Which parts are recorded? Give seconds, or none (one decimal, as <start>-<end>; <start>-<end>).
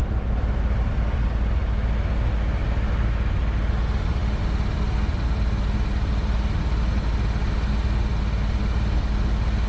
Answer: 1.5-4.2; 6.9-9.7